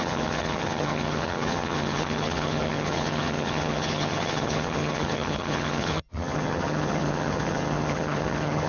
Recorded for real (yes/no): no